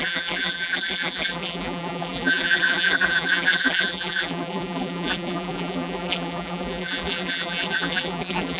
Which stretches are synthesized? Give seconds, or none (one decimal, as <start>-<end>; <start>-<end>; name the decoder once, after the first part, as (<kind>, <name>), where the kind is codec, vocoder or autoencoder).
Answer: 0.0-8.6 (vocoder, BigVGAN v2)